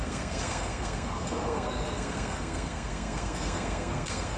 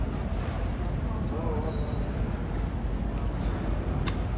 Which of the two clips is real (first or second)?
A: second